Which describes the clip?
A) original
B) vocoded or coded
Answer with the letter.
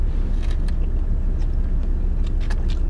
A